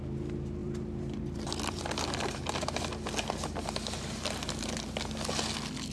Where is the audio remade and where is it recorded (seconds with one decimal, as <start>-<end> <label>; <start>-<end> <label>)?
0.0-0.6 recorded; 0.6-2.2 remade; 2.2-5.9 recorded